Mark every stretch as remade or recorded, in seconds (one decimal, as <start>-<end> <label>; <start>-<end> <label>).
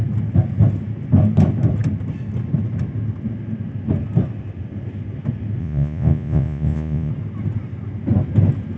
0.0-5.6 recorded; 5.6-7.1 remade; 7.1-8.8 recorded